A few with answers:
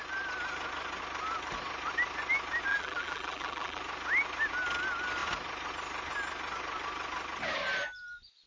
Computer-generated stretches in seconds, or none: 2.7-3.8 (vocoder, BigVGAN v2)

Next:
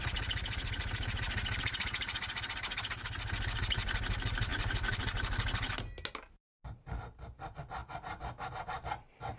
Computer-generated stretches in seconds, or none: 4.5-5.0 (vocoder, BigVGAN v2); 7.8-8.5

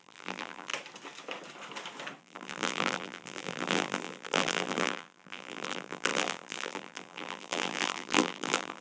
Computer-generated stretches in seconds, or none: 0.0-0.7 (vocoder, BigVGAN v2); 2.2-8.8

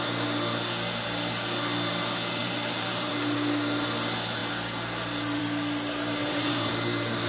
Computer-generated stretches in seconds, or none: 2.4-3.1 (vocoder, BigVGAN v2); 6.2-6.7

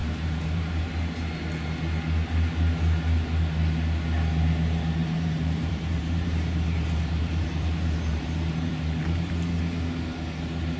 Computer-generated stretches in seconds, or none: 0.0-0.7 (vocoder, BigVGAN v2); 5.0-9.3

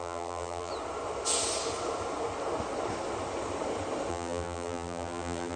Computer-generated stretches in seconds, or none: 0.0-0.7 (vocoder, BigVGAN v2); 4.1-5.6

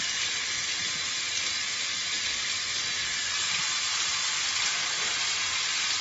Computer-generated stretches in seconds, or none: none